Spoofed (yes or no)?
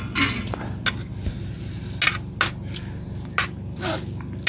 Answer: no